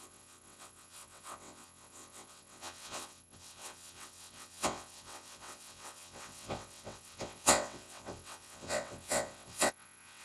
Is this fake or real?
fake